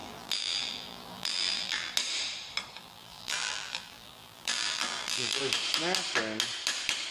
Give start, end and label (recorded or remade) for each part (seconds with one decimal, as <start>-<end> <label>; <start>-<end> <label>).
0.0-1.9 remade; 1.9-2.8 recorded; 2.8-5.4 remade; 5.4-7.1 recorded